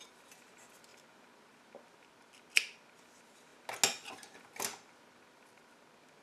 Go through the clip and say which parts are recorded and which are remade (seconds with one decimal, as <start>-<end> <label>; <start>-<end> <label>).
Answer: 0.0-6.2 recorded